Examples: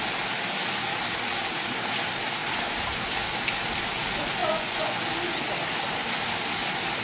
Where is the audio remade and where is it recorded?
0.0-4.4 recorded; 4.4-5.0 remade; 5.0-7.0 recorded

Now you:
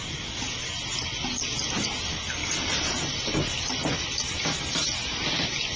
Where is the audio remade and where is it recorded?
0.0-5.8 recorded

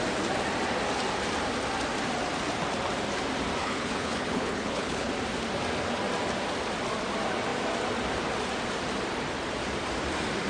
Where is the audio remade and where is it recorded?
0.0-3.6 recorded; 3.6-5.1 remade; 5.1-10.5 recorded

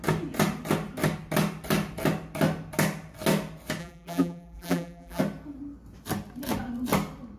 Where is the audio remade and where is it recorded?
0.0-3.8 recorded; 3.8-5.2 remade; 5.2-7.4 recorded